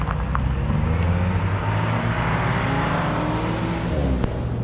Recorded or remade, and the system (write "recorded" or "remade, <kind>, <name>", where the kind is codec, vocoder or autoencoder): recorded